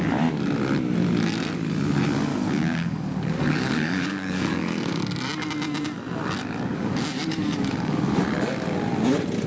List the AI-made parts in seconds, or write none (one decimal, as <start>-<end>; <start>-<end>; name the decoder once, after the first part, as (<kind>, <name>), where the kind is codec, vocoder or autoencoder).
2.3-5.0 (codec, DAC); 6.7-8.2